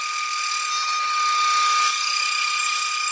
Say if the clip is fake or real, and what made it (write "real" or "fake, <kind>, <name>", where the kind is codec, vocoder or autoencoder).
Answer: real